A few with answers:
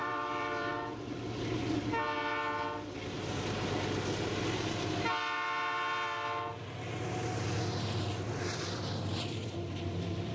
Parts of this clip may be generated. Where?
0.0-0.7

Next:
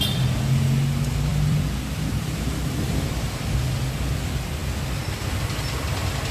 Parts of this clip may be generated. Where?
1.3-3.5